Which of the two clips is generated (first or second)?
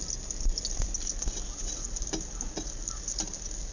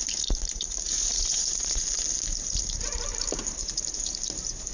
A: second